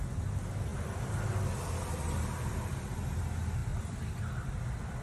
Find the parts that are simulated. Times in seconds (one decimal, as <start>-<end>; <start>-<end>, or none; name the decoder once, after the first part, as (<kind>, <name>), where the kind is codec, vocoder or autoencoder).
0.7-3.2 (vocoder, BigVGAN v2); 3.6-5.0

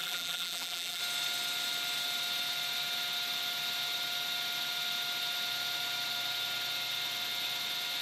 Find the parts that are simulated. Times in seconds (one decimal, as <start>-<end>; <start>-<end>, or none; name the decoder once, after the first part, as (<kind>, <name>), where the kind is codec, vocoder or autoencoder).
0.0-1.0 (vocoder, BigVGAN v2)

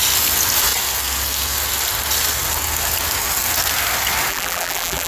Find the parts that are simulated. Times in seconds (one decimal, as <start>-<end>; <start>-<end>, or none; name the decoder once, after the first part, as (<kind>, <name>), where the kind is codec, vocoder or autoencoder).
4.3-5.1 (vocoder, BigVGAN v2)

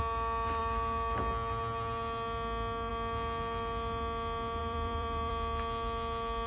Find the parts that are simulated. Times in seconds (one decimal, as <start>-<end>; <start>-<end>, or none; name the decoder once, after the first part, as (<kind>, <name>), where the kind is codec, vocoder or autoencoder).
4.6-5.3 (vocoder, BigVGAN v2)

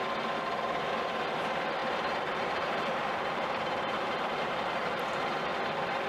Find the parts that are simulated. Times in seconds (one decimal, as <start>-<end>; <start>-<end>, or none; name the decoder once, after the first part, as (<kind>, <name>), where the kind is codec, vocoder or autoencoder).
1.8-5.5 (vocoder, BigVGAN v2)

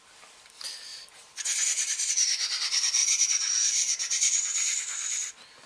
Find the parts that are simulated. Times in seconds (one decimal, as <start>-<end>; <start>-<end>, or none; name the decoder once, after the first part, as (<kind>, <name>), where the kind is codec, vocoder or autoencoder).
0.9-2.1 (vocoder, BigVGAN v2); 3.0-5.3

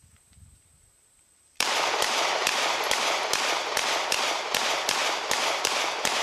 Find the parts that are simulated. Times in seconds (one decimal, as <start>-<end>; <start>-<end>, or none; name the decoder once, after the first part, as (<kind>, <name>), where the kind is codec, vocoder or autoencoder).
0.0-3.7 (vocoder, BigVGAN v2); 5.0-6.2